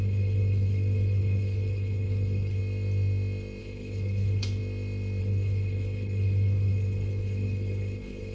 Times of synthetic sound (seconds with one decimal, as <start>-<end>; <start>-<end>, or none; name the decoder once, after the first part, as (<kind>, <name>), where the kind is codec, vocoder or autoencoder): 0.0-2.6 (codec, HILCodec); 3.6-4.6; 5.2-8.3